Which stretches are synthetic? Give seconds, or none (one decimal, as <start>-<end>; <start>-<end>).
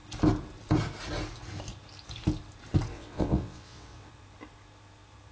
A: 2.9-4.1